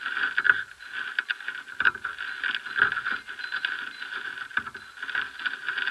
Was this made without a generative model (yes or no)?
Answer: yes